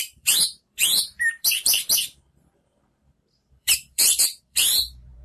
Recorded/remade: remade